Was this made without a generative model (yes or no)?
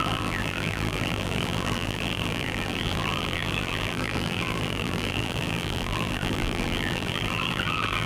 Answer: no